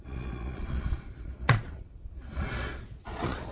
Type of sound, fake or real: fake